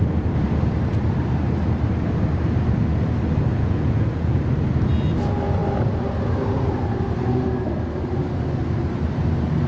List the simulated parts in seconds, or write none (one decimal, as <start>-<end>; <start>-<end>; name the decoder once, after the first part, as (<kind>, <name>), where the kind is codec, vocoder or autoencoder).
3.5-4.4 (vocoder, Vocos)

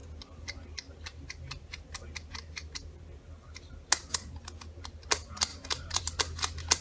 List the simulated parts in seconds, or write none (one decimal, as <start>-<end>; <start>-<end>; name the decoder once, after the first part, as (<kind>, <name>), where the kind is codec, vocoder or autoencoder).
5.5-6.0 (vocoder, BigVGAN v2)

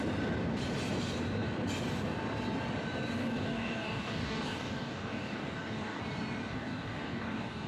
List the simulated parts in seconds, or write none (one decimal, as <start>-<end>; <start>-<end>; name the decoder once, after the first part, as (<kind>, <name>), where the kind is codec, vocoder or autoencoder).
3.2-6.0 (codec, DAC); 6.5-7.7

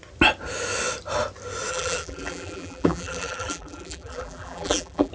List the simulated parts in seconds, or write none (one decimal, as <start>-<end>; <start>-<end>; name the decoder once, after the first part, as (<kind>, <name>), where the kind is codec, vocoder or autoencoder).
1.7-5.1 (vocoder, BigVGAN v2)

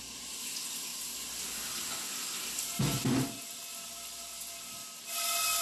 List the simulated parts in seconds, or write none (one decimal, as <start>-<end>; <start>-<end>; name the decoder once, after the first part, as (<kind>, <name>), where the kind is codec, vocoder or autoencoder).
0.9-3.4 (vocoder, BigVGAN v2)